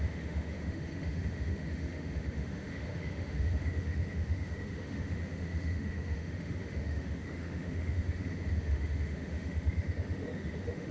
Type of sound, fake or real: fake